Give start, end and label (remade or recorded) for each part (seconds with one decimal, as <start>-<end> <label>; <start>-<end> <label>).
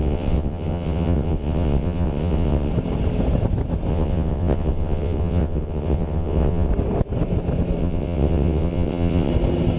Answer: 0.0-2.7 remade; 2.7-3.9 recorded; 3.9-6.7 remade; 6.7-7.8 recorded; 7.8-9.3 remade; 9.3-9.8 recorded